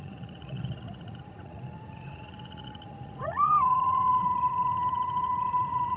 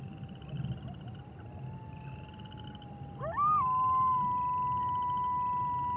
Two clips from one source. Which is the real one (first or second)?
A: second